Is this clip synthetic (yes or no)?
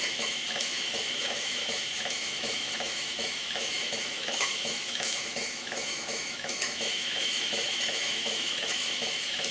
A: yes